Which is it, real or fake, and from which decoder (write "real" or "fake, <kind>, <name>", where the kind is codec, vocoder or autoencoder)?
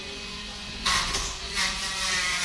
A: fake, vocoder, Vocos